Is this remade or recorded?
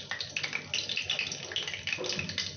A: recorded